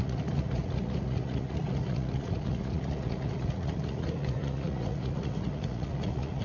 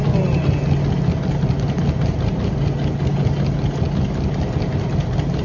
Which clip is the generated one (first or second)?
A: first